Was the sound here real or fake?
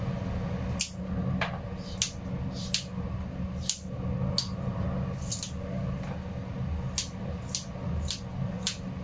real